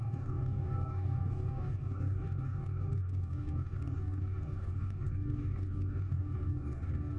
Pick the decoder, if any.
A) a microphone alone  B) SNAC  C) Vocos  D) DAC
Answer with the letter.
D